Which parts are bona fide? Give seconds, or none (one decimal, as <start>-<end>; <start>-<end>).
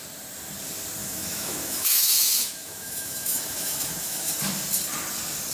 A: 0.0-1.0; 4.3-5.5